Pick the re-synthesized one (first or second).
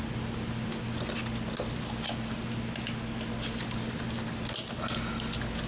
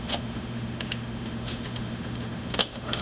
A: second